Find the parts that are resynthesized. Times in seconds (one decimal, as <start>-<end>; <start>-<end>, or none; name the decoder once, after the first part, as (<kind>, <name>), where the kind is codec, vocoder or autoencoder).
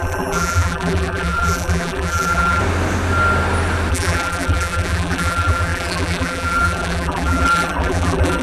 0.0-2.6 (vocoder, BigVGAN v2); 3.9-8.4